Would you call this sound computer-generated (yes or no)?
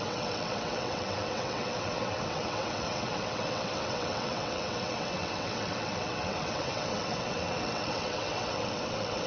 yes